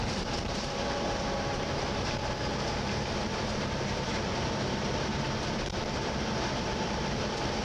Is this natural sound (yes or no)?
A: no